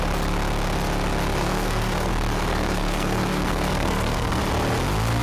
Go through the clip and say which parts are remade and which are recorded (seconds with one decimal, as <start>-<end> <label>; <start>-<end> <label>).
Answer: 0.0-1.4 recorded; 1.4-2.1 remade; 2.1-2.5 recorded; 2.5-4.4 remade; 4.4-5.2 recorded